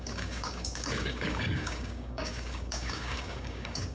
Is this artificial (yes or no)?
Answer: yes